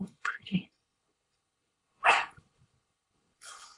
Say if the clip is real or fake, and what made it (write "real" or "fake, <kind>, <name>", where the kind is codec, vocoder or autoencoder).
fake, codec, HILCodec